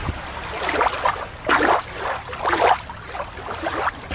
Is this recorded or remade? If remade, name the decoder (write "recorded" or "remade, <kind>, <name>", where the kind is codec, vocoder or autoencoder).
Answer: recorded